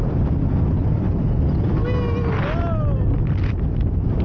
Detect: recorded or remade recorded